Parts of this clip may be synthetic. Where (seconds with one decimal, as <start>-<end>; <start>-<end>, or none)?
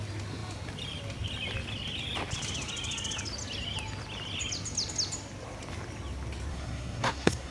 6.5-7.5